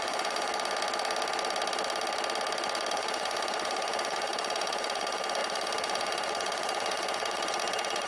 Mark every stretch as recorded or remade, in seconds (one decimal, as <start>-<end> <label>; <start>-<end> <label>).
0.0-0.5 remade; 0.5-2.9 recorded; 2.9-8.1 remade